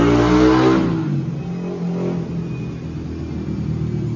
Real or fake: real